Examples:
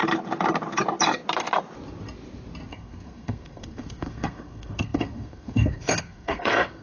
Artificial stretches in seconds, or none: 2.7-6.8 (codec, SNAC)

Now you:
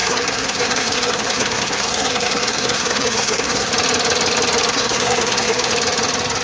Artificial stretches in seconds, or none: 0.0-3.7 (codec, SNAC); 4.7-5.7

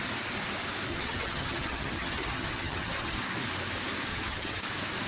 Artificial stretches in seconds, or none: 0.9-3.2 (vocoder, HiFi-GAN); 4.1-4.6

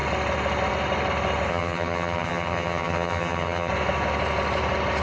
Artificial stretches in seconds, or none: 1.5-3.7 (vocoder, HiFi-GAN)